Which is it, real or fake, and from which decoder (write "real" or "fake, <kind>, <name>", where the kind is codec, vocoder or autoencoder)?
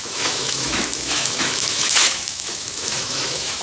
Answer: fake, autoencoder, DAC-VAE